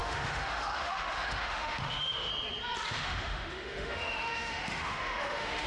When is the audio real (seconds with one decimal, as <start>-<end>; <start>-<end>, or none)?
2.3-2.9